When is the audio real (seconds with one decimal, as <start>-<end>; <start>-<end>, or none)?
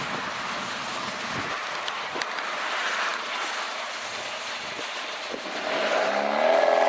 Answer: 0.0-6.9